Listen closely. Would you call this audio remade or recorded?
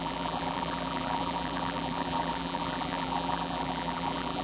remade